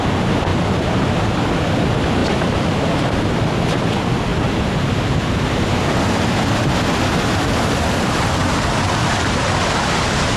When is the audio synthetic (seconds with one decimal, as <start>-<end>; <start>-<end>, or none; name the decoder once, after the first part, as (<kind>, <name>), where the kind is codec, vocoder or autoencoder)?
0.5-1.2 (vocoder, BigVGAN v2); 2.2-2.9